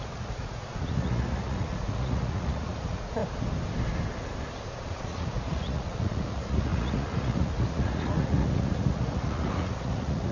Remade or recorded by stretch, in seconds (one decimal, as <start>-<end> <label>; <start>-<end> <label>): 0.0-3.2 remade; 3.2-4.7 recorded; 4.7-10.3 remade